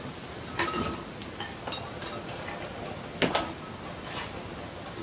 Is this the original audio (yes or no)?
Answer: yes